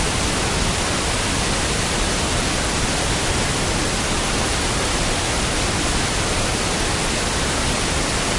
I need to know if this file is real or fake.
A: real